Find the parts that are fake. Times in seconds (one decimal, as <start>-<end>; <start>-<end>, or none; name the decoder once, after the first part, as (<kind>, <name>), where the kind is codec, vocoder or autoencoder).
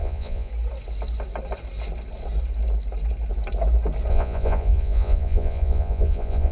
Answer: 0.0-0.5 (vocoder, Vocos); 4.1-6.5